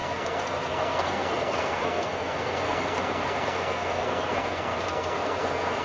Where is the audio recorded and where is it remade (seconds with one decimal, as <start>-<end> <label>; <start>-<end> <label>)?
0.0-5.8 remade